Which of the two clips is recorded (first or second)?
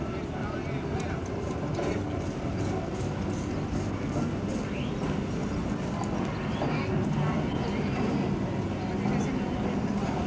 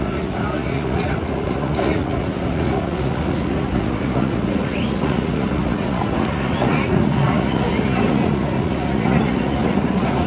first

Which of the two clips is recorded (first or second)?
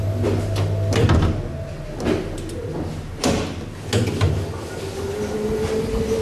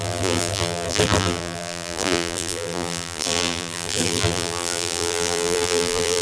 first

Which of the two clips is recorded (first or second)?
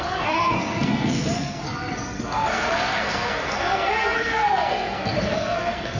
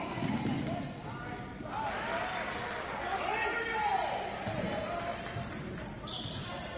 second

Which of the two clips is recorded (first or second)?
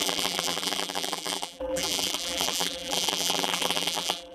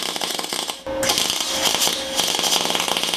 second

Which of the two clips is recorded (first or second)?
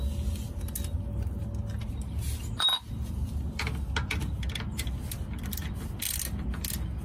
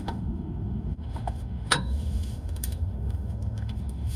first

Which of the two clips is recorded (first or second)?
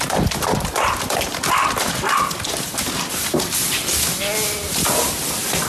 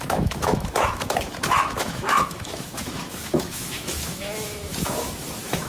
first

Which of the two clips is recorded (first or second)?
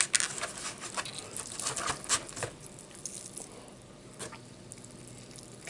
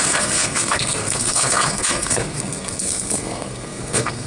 first